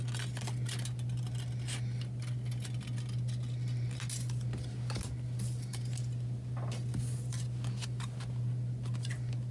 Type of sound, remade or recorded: recorded